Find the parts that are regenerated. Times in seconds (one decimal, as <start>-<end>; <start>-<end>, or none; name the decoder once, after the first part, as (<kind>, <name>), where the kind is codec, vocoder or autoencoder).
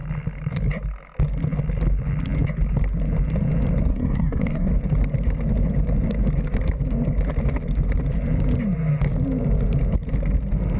3.9-4.7 (codec, SNAC)